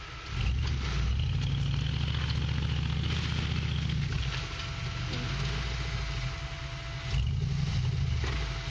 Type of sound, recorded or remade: recorded